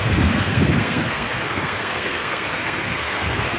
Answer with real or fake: fake